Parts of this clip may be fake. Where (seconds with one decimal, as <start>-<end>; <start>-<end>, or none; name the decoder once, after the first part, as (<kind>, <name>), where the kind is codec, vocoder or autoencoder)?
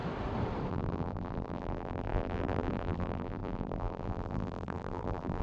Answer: 0.7-5.4 (vocoder, BigVGAN v2)